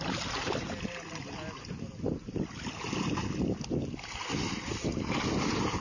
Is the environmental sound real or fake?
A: real